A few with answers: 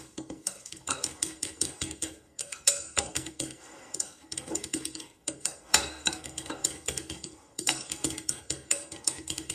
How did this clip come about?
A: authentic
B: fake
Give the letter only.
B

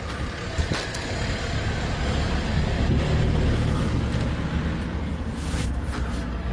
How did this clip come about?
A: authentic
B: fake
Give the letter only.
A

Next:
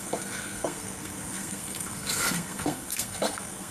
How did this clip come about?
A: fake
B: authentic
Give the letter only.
A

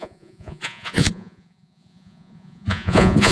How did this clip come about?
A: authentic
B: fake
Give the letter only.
B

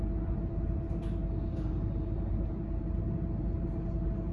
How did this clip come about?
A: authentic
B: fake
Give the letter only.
A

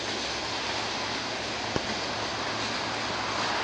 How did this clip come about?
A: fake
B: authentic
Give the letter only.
B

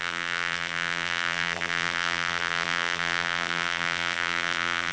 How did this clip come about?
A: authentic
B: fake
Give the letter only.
B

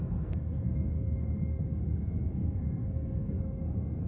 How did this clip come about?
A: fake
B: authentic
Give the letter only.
A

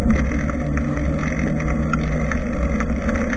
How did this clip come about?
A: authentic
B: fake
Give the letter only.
A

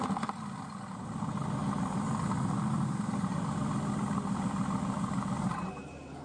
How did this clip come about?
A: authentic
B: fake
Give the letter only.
A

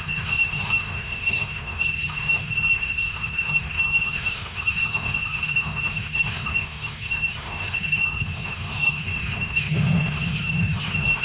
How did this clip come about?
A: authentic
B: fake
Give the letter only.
B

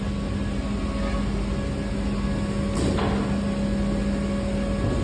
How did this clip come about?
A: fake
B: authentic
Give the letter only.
B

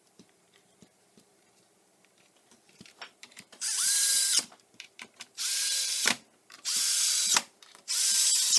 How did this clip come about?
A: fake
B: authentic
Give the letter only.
A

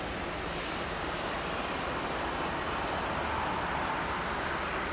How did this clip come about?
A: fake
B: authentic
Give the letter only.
B